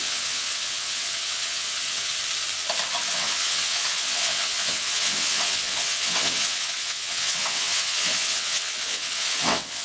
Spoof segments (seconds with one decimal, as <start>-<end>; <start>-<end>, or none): 0.0-2.1; 3.1-9.8